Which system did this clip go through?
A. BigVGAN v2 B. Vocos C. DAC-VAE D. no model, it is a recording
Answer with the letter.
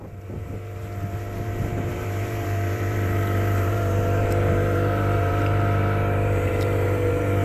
A